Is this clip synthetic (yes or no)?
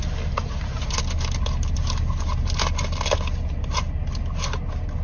no